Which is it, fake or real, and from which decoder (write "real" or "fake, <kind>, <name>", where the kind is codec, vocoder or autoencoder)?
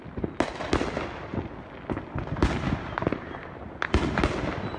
real